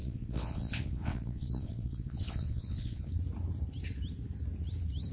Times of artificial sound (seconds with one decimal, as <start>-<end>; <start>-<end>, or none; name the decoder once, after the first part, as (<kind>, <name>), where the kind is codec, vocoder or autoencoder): 0.0-3.1 (vocoder, WaveNeXt)